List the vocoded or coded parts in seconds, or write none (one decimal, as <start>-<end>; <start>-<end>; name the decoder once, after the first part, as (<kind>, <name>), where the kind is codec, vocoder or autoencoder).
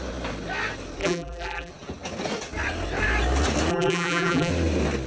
1.0-1.7 (vocoder, BigVGAN v2); 3.7-4.5